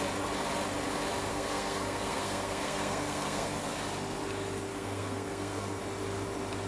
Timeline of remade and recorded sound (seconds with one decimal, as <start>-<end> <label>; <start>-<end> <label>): 0.0-1.3 recorded; 1.3-3.6 remade; 3.6-4.7 recorded; 4.7-5.8 remade; 5.8-6.7 recorded